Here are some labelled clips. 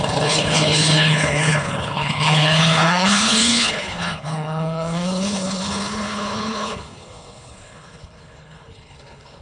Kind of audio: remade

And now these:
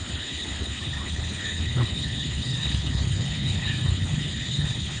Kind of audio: remade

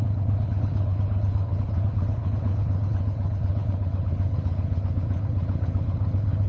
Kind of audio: remade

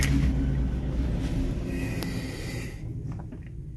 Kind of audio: recorded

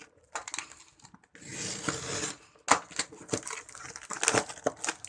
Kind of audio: recorded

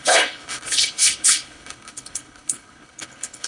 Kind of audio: remade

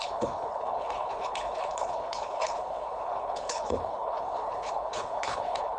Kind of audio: remade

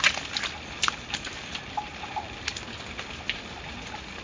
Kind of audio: recorded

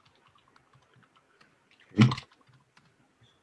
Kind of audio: recorded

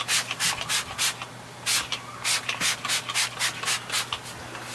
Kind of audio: recorded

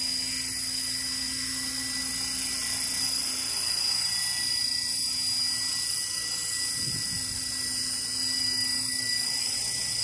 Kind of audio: recorded